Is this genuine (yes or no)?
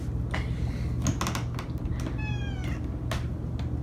yes